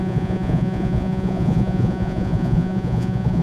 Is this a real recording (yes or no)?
no